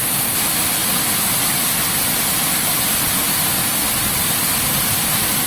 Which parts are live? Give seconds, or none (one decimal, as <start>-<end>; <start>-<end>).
0.0-3.6; 4.1-5.5